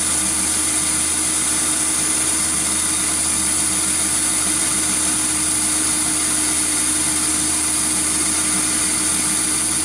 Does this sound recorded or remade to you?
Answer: recorded